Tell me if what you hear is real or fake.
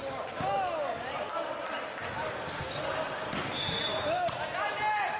real